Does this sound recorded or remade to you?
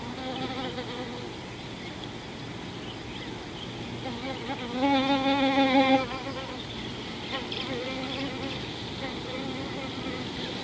recorded